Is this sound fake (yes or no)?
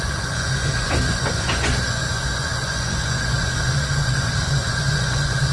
yes